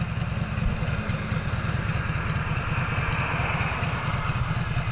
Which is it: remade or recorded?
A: recorded